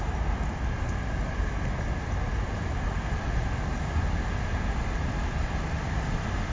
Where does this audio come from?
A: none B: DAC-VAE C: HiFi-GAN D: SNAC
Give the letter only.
A